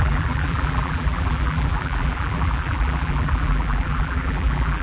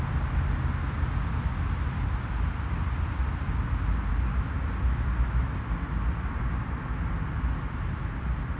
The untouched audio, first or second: second